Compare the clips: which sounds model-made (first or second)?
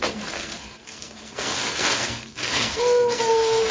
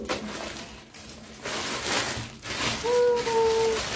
first